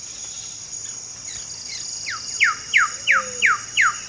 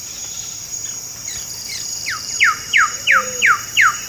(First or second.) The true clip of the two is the first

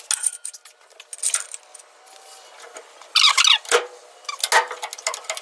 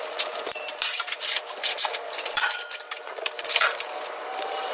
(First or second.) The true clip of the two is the first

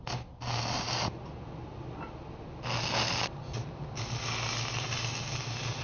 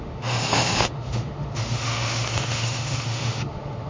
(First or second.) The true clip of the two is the first